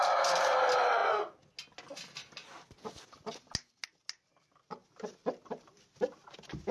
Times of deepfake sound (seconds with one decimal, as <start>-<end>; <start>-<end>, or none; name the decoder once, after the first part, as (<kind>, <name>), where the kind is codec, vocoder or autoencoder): none